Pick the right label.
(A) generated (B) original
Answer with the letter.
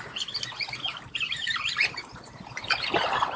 B